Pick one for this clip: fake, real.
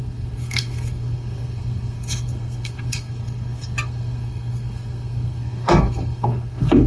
fake